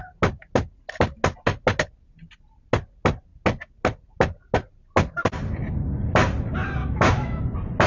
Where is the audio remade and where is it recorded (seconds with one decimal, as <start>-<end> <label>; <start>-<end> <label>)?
0.0-6.8 recorded; 6.8-7.4 remade; 7.4-7.9 recorded